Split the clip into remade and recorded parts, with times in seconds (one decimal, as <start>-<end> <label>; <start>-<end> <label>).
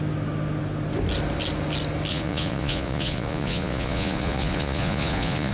0.0-2.1 recorded; 2.1-5.5 remade